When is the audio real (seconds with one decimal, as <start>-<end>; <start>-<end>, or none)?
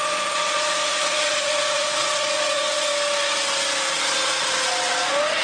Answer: 2.9-5.4